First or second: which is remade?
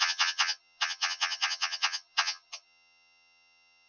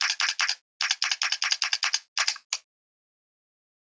first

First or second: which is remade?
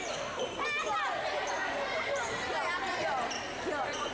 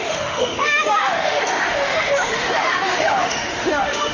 second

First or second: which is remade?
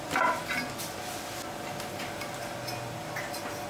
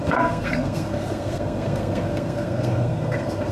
second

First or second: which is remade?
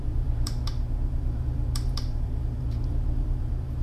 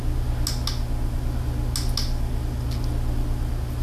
first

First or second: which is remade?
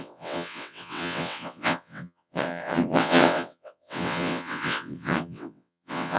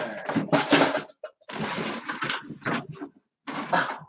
first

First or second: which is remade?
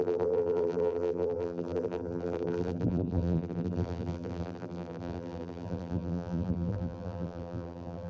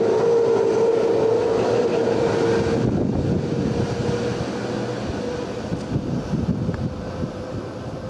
first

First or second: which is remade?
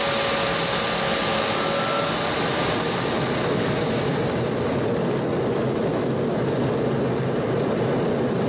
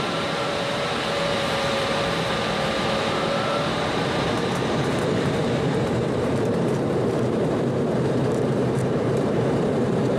second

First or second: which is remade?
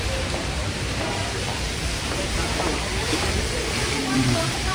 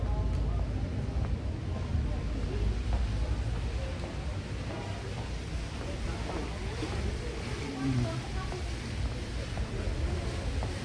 first